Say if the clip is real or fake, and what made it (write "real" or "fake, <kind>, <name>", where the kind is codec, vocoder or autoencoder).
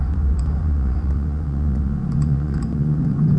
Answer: fake, vocoder, Vocos